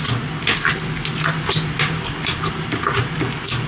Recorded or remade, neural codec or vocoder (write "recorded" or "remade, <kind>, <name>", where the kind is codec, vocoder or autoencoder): recorded